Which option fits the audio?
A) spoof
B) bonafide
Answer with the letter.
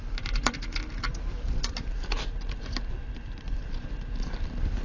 B